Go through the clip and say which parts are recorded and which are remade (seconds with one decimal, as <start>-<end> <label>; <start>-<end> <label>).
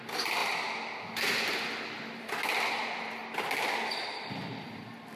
0.0-0.4 remade; 0.4-2.2 recorded; 2.2-3.2 remade; 3.2-4.5 recorded; 4.5-5.2 remade